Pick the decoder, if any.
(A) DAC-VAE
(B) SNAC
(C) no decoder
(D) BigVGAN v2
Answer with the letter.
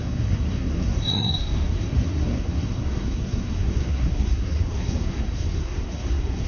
B